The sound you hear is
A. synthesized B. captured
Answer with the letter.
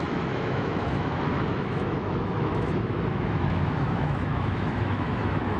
A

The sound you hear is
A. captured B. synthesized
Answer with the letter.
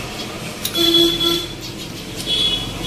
A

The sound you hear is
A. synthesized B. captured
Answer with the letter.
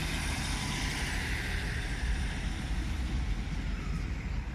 B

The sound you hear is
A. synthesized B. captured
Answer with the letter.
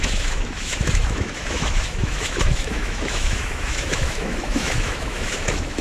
A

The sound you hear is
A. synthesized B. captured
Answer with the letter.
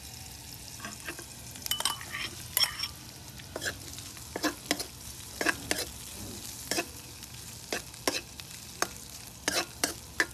B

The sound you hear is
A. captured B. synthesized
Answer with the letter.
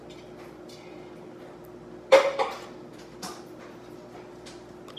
A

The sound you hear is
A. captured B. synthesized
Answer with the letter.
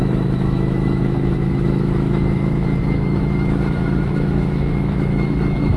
B